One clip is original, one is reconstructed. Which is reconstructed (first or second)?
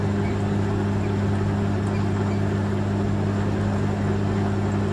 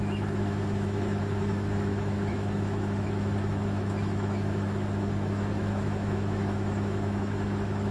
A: second